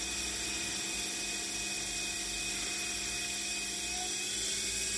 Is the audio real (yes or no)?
yes